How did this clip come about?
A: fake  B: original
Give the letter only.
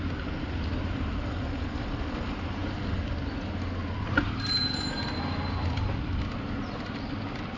B